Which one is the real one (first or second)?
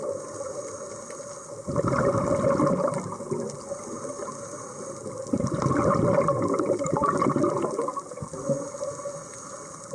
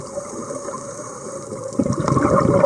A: first